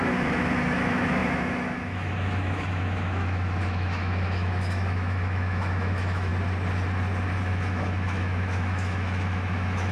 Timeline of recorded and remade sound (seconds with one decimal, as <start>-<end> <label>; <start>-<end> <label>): 0.0-6.3 remade; 6.3-7.4 recorded; 7.4-9.9 remade